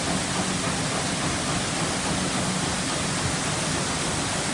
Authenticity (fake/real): real